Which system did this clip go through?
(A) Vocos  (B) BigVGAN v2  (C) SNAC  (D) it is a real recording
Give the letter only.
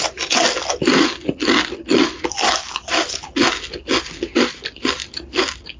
D